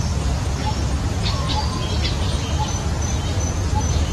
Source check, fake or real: real